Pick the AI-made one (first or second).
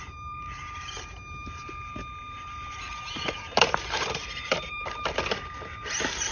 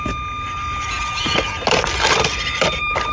first